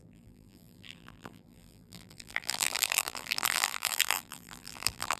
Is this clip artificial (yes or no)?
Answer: yes